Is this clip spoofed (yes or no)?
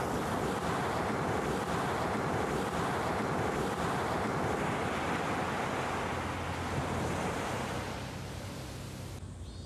no